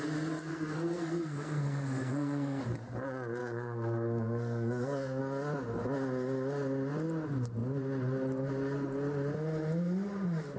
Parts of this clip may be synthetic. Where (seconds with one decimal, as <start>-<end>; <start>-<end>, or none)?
0.5-2.6; 3.4-5.2